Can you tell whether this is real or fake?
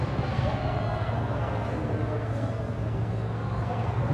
fake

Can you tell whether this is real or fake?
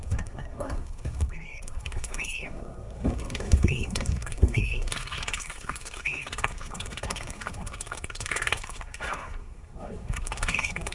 fake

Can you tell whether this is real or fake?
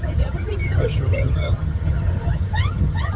fake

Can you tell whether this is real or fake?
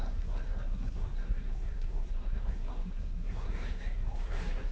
fake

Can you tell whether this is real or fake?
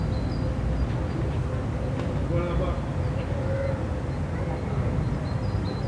real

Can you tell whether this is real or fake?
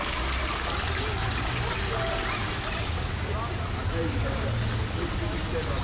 real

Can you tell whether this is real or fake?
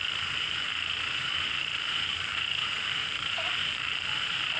fake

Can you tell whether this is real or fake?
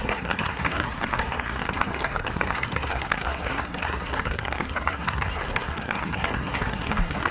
fake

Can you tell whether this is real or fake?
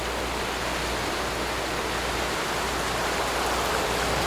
real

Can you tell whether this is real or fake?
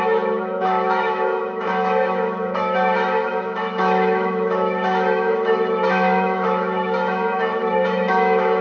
fake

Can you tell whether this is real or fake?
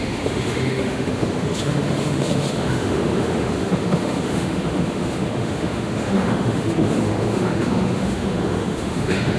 fake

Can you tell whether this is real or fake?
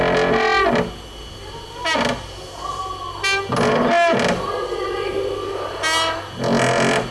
real